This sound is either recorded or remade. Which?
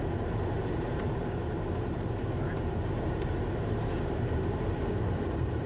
remade